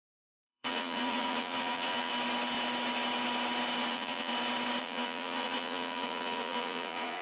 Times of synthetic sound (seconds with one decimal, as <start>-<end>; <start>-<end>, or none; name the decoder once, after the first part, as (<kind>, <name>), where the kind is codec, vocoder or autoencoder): 0.0-2.1 (vocoder, Vocos); 3.9-4.3; 4.8-7.2